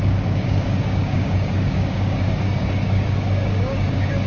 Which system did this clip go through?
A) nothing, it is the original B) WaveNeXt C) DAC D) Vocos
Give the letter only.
C